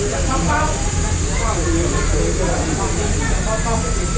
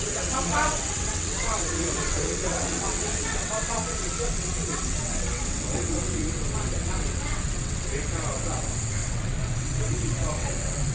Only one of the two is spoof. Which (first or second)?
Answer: second